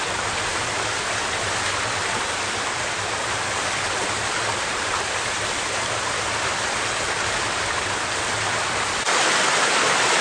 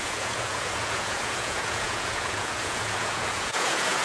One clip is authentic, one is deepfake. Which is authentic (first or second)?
first